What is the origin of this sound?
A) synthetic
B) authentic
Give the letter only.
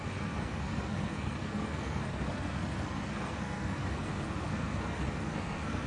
A